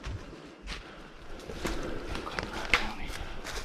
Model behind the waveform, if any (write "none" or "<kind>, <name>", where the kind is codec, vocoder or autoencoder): none